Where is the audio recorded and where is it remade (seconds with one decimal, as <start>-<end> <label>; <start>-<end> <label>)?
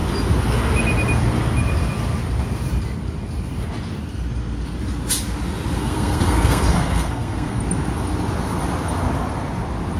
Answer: 0.0-5.8 recorded; 5.8-7.6 remade; 7.6-10.0 recorded